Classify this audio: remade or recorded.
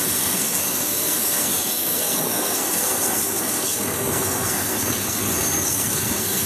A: remade